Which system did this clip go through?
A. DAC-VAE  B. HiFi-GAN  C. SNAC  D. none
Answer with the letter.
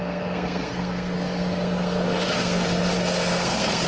C